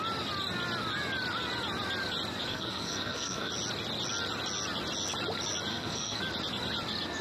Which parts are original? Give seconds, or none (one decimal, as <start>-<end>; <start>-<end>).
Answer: 0.0-2.5; 3.5-5.7; 6.2-7.2